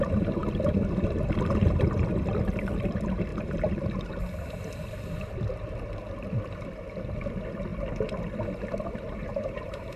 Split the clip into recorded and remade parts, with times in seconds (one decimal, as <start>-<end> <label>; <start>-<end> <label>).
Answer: 0.0-3.3 recorded; 3.3-4.1 remade; 4.1-9.2 recorded; 9.2-10.0 remade